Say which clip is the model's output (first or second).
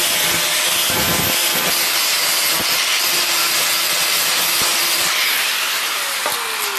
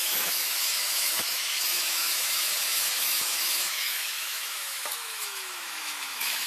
second